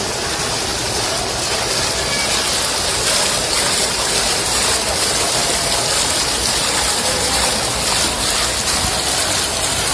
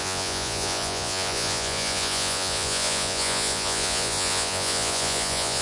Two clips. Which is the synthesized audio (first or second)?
second